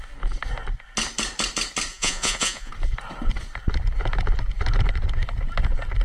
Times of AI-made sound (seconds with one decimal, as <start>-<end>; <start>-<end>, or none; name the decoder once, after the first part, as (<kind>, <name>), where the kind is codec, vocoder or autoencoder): 1.9-2.7 (vocoder, Vocos)